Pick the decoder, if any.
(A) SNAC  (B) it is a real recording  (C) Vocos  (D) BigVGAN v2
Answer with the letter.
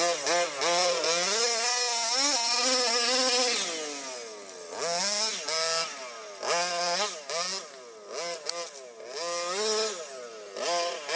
B